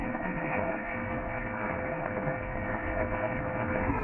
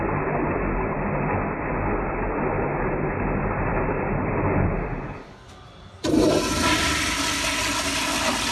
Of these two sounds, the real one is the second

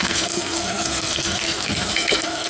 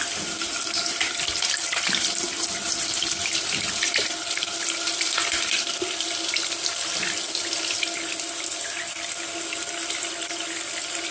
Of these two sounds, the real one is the second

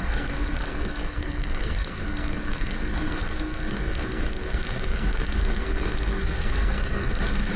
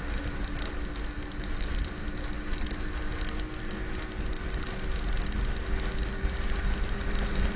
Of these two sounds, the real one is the second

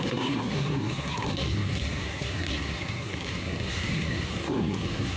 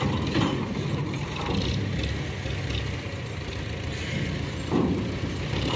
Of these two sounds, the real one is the second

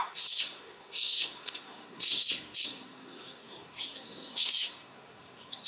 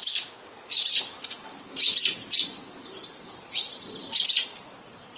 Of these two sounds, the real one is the second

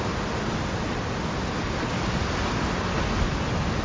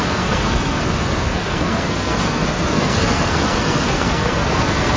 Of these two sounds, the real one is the first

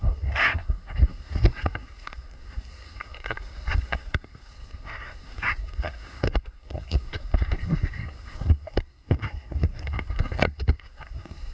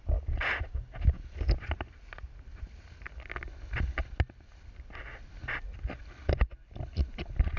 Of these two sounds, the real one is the second